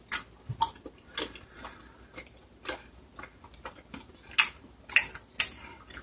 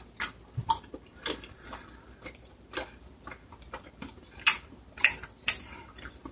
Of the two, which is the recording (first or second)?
first